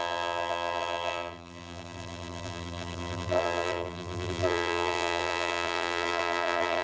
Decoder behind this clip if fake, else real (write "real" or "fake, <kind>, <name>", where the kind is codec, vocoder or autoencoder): fake, vocoder, BigVGAN v2